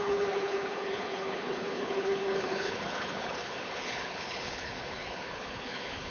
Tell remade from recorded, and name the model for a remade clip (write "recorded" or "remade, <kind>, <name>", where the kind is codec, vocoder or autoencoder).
remade, codec, HILCodec